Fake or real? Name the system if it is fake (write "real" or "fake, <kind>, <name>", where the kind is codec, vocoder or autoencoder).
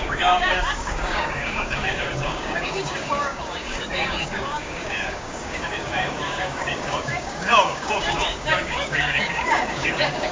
fake, codec, DAC